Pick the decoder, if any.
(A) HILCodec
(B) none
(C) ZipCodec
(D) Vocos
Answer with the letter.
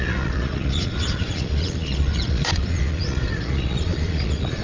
D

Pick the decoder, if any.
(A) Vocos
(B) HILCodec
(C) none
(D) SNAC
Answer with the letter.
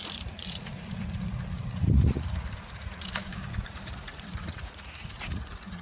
A